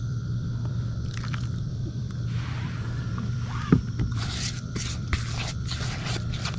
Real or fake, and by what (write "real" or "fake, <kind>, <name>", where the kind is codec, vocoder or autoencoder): fake, vocoder, BigVGAN v2